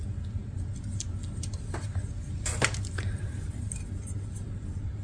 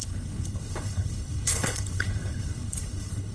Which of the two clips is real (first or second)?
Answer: first